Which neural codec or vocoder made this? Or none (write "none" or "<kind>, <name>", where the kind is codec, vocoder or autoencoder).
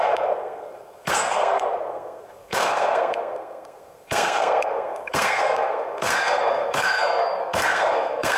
codec, SNAC